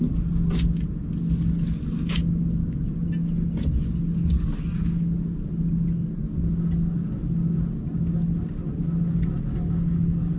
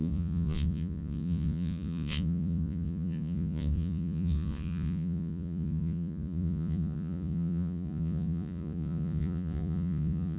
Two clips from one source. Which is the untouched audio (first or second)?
first